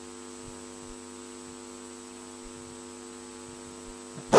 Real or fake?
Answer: real